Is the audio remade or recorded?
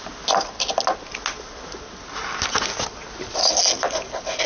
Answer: recorded